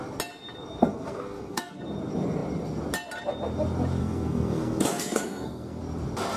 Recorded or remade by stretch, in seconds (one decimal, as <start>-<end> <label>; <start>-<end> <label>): 0.0-0.8 recorded; 0.8-1.8 remade; 1.8-4.0 recorded; 4.0-5.8 remade; 5.8-6.4 recorded